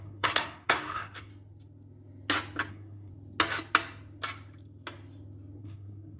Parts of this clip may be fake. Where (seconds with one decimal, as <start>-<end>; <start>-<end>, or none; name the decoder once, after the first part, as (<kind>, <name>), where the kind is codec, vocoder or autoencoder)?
0.0-1.3 (codec, SNAC); 2.7-3.1; 5.6-6.2